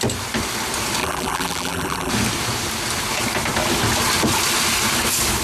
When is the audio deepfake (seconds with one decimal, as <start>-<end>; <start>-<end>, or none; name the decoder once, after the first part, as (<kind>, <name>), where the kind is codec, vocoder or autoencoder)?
1.0-2.1 (vocoder, BigVGAN v2)